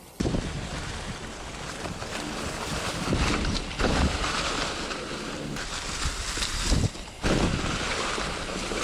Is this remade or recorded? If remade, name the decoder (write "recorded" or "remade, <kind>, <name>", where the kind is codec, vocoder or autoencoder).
remade, vocoder, BigVGAN v2